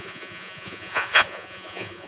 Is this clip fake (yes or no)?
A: yes